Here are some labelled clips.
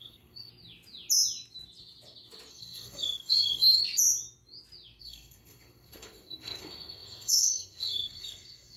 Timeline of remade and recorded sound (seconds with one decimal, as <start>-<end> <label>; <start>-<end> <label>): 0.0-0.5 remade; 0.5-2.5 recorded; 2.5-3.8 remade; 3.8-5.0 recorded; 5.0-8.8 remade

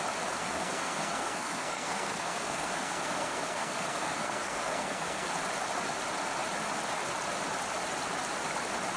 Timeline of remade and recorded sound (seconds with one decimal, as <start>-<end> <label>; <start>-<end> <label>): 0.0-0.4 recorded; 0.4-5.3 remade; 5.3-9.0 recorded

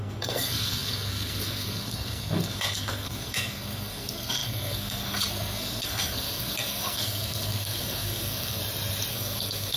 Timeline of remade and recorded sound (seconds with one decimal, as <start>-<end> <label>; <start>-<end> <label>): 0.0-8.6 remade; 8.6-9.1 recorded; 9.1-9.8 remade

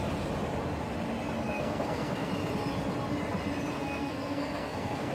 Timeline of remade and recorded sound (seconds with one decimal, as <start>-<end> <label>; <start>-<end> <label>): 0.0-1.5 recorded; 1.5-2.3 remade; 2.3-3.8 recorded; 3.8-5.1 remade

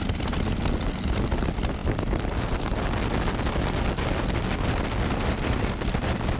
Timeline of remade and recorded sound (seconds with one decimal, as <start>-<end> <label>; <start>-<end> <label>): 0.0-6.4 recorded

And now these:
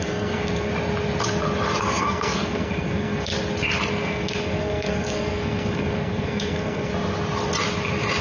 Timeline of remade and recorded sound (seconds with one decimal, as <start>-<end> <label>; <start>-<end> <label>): 0.0-0.7 remade; 0.7-1.8 recorded; 1.8-3.3 remade; 3.3-3.9 recorded; 3.9-6.9 remade; 6.9-8.2 recorded

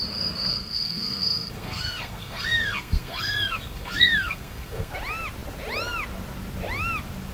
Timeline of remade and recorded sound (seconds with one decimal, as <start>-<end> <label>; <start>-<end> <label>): 0.0-0.5 recorded; 0.5-4.9 remade; 4.9-7.3 recorded